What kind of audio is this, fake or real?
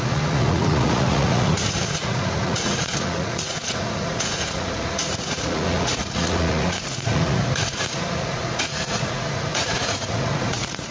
fake